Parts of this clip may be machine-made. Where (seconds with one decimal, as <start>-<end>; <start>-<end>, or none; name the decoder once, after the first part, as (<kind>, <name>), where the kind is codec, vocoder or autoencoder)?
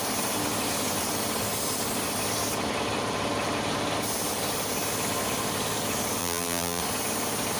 6.2-6.8 (vocoder, BigVGAN v2)